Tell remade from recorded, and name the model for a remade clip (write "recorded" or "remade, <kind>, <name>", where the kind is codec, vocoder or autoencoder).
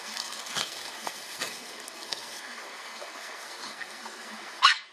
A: remade, codec, SNAC